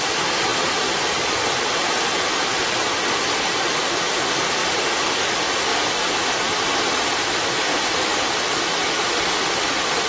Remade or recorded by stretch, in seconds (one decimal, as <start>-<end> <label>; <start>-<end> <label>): 0.0-0.5 recorded; 0.5-2.9 remade; 2.9-10.1 recorded